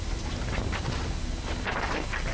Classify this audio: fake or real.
real